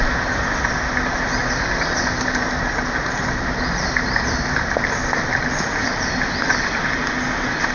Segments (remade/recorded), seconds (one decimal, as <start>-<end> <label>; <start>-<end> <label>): 0.0-7.7 recorded